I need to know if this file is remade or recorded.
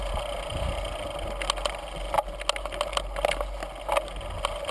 recorded